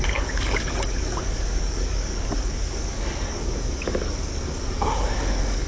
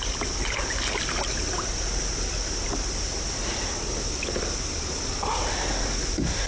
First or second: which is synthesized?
first